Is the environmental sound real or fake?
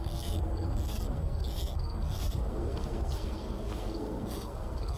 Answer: fake